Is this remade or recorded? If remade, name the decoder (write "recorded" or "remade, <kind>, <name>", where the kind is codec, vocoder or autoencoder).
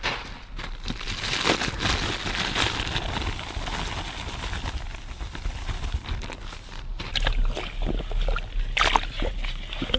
recorded